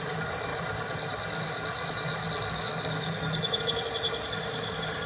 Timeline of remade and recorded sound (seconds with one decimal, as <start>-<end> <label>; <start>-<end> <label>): 0.0-5.1 recorded